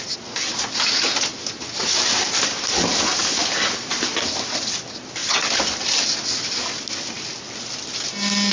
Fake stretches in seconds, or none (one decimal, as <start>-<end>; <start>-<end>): none